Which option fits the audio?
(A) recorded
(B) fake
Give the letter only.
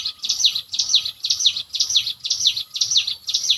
B